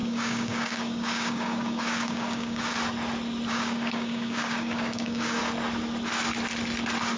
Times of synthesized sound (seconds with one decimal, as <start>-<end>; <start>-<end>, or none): 0.0-2.7; 3.5-5.4